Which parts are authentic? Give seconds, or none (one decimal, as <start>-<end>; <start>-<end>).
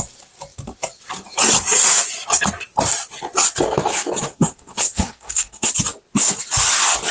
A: 0.0-4.3; 5.7-7.1